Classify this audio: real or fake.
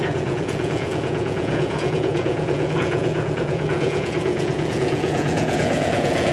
fake